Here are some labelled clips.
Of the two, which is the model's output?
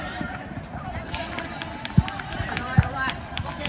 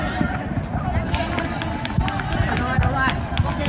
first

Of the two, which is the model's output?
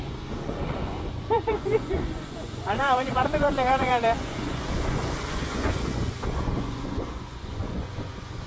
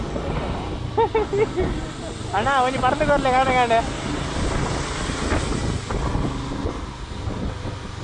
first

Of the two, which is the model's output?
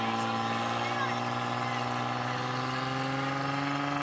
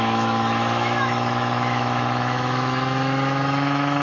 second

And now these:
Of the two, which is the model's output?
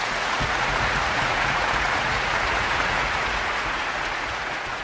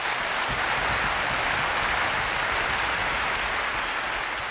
first